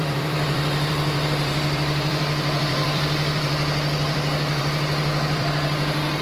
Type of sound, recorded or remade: remade